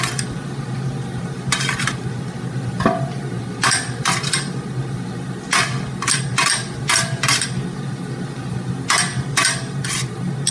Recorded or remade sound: recorded